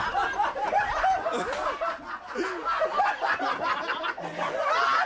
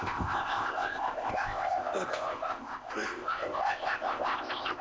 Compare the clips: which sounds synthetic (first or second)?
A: second